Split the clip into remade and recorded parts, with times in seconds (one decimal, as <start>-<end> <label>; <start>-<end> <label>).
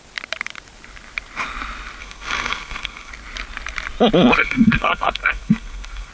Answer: 0.0-2.0 recorded; 2.0-3.1 remade; 3.1-4.4 recorded; 4.4-6.1 remade